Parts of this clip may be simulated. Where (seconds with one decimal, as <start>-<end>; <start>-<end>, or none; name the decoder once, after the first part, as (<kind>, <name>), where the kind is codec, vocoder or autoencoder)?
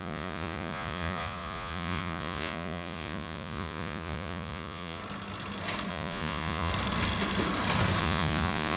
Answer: 0.0-5.0 (vocoder, Vocos); 5.9-6.7; 8.0-8.8